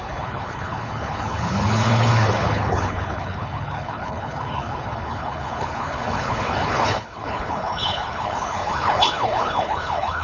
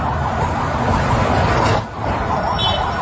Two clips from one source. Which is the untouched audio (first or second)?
second